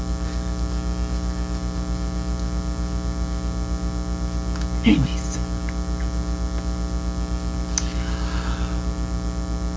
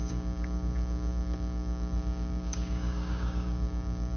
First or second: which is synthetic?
second